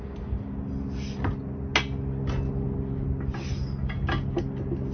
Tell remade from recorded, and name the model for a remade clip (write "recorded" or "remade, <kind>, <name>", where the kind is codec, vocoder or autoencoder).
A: recorded